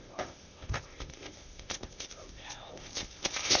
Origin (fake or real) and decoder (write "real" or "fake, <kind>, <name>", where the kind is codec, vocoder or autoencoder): fake, codec, ZipCodec